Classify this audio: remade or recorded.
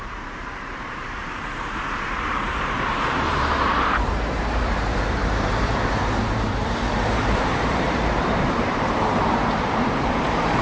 remade